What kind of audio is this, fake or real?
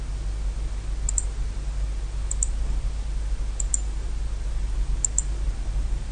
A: real